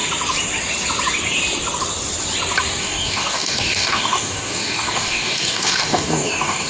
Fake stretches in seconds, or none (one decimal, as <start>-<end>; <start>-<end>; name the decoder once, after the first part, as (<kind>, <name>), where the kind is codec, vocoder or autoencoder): 2.8-6.7 (codec, DAC)